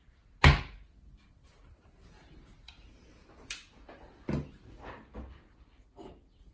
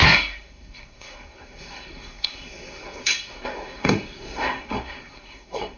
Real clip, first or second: first